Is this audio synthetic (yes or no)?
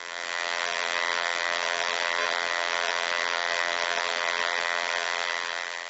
yes